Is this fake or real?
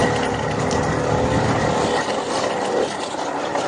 real